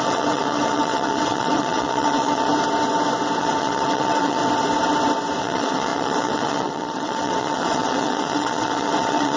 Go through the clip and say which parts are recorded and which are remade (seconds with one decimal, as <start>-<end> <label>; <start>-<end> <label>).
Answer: 0.0-2.5 remade; 2.5-3.4 recorded; 3.4-4.4 remade; 4.4-5.4 recorded; 5.4-9.4 remade